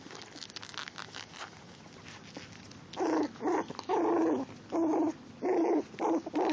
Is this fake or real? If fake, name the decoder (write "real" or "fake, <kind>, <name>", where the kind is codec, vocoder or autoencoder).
real